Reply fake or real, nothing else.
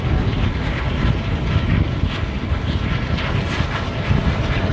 real